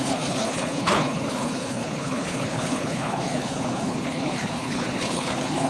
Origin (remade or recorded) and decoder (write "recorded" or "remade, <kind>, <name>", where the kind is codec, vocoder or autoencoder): remade, codec, HILCodec